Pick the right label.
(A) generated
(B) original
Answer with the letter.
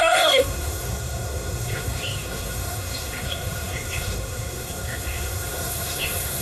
A